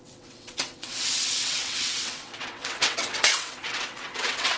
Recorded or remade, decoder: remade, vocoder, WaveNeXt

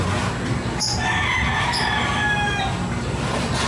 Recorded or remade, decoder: recorded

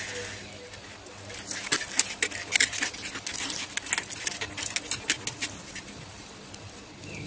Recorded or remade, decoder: recorded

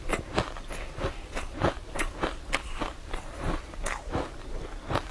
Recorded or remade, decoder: recorded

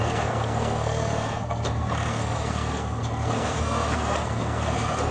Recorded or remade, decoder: remade, codec, SNAC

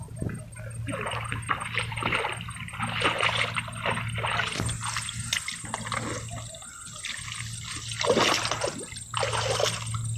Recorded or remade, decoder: recorded